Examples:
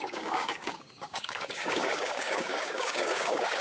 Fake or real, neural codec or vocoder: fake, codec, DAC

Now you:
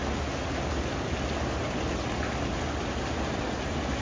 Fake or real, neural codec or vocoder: real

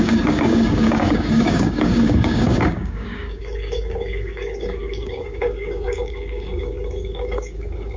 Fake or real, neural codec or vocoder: fake, codec, DAC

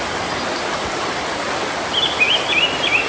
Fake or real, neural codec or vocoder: real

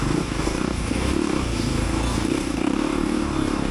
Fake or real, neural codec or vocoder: fake, codec, DAC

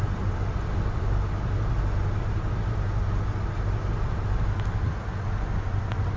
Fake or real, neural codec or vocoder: real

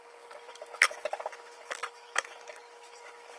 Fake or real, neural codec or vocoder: fake, codec, DAC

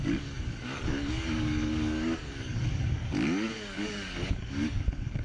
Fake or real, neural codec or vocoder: fake, codec, DAC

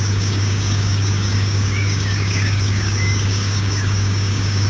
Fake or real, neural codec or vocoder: fake, codec, DAC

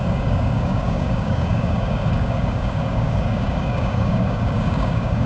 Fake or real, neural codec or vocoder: fake, codec, DAC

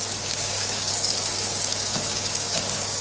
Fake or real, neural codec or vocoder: fake, codec, DAC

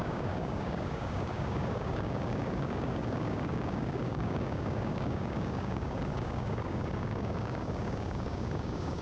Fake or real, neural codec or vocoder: fake, codec, DAC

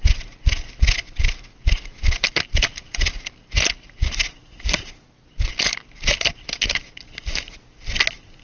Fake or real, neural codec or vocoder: real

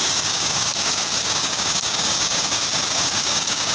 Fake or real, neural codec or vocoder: fake, codec, DAC